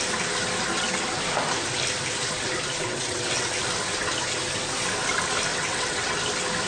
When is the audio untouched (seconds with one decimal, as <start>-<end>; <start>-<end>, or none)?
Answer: 0.0-2.9; 3.5-5.5; 6.2-6.7